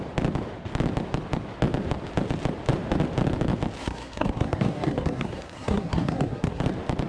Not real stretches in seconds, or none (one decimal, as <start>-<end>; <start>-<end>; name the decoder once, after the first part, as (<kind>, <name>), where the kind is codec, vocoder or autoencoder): 3.8-6.6 (codec, SNAC)